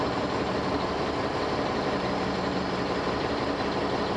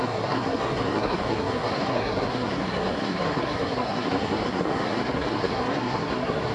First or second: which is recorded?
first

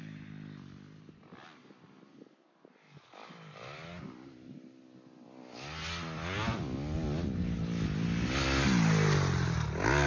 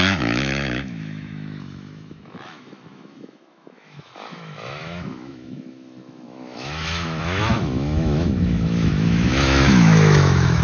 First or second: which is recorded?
first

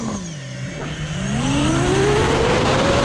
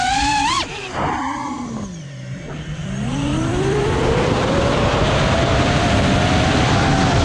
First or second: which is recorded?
first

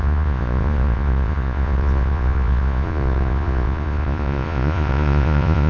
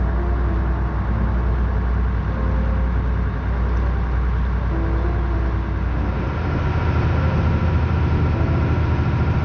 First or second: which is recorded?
second